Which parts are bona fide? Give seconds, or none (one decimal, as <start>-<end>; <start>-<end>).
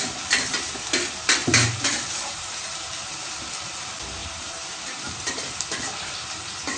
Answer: 0.0-1.4; 2.6-4.2; 5.4-6.8